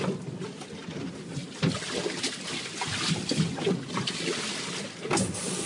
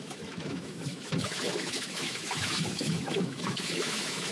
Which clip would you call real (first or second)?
first